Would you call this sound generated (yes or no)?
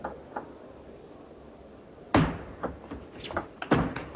no